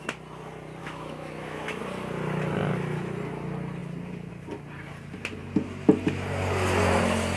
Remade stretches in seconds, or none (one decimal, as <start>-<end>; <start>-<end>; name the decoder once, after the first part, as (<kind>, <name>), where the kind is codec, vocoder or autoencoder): 0.8-1.8 (autoencoder, DAC-VAE)